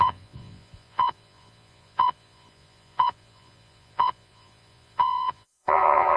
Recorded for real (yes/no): no